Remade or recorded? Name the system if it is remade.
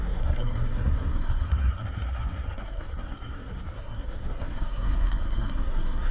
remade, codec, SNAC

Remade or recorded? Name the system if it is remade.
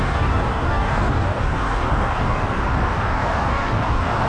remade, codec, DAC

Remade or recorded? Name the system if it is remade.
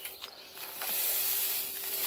remade, vocoder, BigVGAN v2